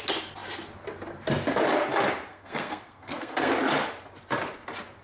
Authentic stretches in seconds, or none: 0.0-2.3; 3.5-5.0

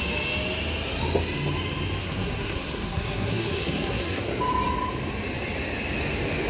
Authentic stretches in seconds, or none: 0.0-2.0; 4.2-6.5

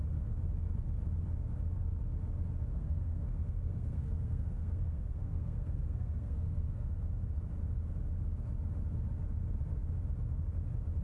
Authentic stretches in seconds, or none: 0.0-2.7; 7.0-11.0

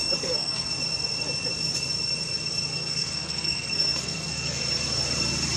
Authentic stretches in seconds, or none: 0.7-2.7; 4.6-5.6

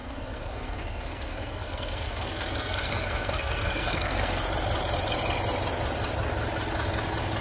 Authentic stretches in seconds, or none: 4.4-7.4